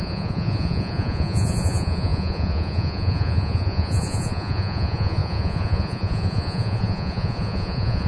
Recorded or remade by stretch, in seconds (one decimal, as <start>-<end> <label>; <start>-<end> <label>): 0.0-8.1 remade